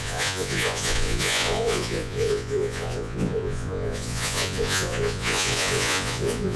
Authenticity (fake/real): fake